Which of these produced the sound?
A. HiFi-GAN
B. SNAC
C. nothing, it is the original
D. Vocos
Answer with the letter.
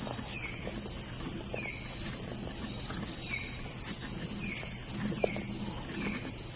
C